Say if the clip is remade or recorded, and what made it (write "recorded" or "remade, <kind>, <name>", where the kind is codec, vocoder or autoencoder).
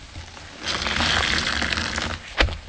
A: recorded